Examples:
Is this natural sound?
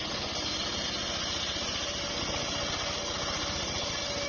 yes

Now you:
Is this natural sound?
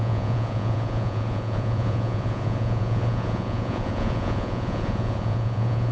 no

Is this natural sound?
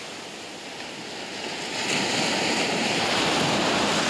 yes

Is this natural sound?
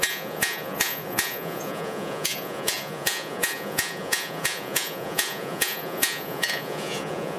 no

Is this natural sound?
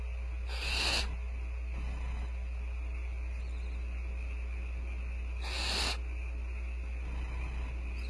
yes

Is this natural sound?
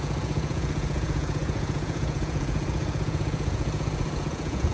no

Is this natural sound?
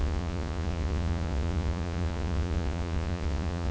no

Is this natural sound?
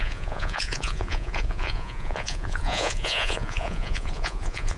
no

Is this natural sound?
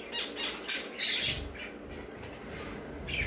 yes